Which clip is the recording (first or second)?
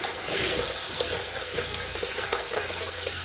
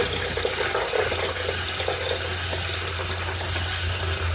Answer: second